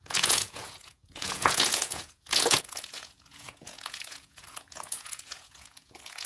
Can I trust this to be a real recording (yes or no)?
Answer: no